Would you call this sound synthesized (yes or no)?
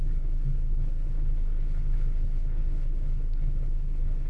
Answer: yes